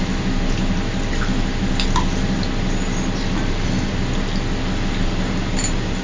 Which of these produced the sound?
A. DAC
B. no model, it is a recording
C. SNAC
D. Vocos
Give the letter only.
B